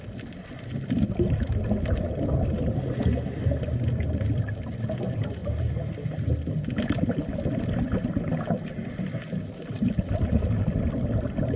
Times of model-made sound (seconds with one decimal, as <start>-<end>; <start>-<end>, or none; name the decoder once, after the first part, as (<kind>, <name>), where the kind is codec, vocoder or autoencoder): none